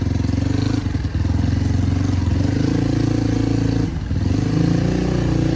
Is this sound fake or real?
real